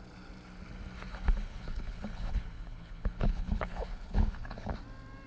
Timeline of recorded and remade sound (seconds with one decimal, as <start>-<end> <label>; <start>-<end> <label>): 0.0-1.5 recorded; 1.5-4.7 remade; 4.7-5.3 recorded